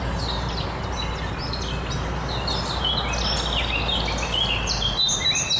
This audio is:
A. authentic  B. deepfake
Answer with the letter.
A